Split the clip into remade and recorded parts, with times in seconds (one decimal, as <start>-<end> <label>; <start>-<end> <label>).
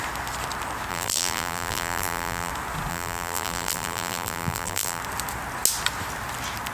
0.0-0.9 recorded; 0.9-2.5 remade; 2.5-2.9 recorded; 2.9-5.0 remade; 5.0-6.7 recorded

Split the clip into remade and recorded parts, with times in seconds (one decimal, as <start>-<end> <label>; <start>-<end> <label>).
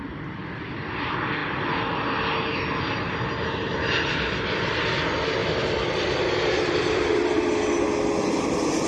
0.0-5.4 recorded; 5.4-7.3 remade; 7.3-8.9 recorded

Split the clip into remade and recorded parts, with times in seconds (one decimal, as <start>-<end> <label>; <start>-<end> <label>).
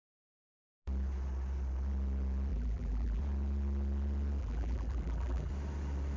0.0-2.5 recorded; 2.5-3.2 remade; 3.2-4.4 recorded; 4.4-5.5 remade; 5.5-6.2 recorded